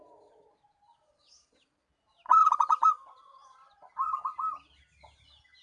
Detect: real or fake real